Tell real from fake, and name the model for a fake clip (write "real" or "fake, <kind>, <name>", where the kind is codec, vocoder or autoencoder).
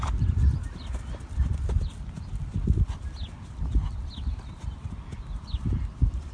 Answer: real